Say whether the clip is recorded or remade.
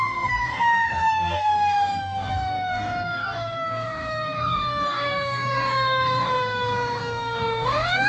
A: remade